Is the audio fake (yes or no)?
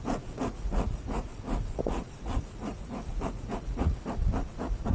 yes